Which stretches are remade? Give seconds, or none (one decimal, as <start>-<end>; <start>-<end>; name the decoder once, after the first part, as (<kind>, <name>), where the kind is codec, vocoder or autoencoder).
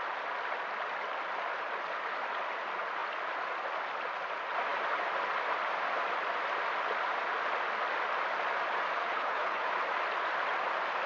9.0-9.7 (codec, HILCodec)